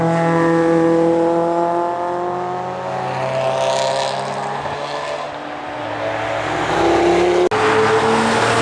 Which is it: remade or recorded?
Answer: recorded